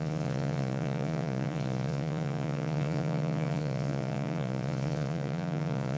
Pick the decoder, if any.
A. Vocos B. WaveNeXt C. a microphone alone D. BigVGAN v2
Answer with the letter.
A